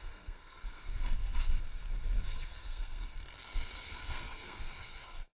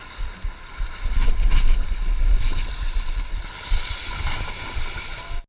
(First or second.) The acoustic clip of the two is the second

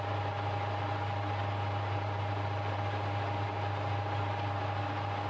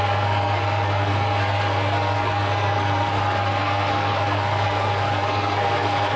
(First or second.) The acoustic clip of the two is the first